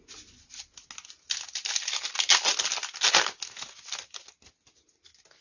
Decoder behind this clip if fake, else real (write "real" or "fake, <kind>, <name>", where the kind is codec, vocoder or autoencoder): real